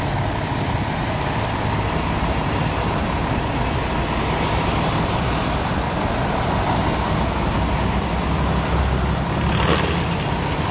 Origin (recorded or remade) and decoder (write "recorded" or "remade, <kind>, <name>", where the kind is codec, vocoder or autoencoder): recorded